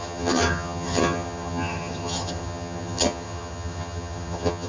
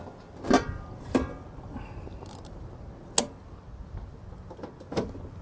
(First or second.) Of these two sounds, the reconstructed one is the first